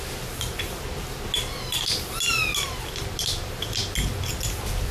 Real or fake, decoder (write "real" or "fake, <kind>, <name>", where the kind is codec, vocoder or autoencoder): real